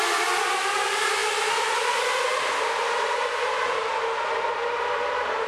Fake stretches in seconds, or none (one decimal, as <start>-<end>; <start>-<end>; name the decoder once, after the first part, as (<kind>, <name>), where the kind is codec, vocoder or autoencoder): 0.0-1.2 (vocoder, BigVGAN v2); 4.5-5.5